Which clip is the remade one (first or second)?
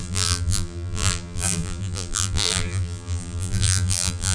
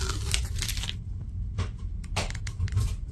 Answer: first